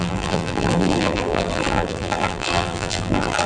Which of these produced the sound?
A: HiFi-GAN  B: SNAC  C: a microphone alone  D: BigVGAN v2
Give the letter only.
D